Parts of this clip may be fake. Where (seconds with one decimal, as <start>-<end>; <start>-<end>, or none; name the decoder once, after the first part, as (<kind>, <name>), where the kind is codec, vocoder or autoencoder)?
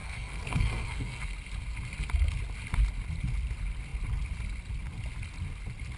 0.0-1.3 (codec, SNAC)